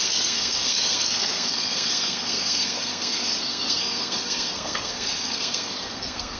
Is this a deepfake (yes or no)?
yes